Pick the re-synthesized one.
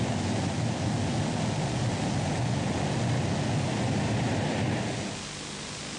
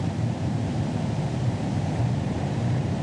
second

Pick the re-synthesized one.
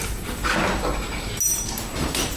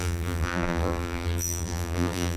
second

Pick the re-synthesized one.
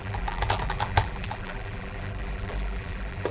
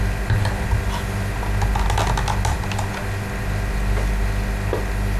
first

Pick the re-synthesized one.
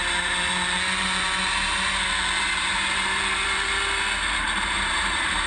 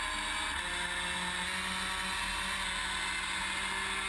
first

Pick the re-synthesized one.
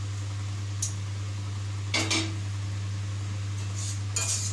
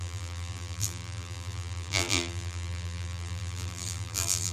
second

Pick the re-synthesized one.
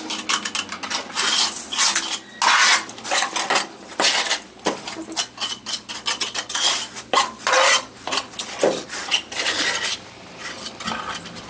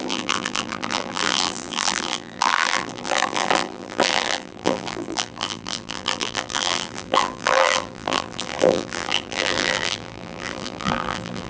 second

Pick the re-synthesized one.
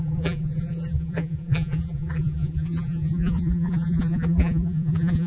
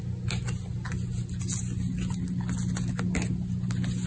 first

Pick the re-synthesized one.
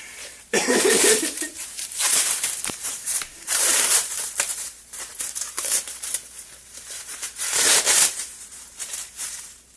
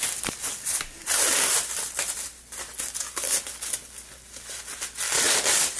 first